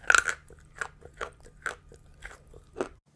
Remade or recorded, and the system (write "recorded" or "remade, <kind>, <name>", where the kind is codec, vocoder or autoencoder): recorded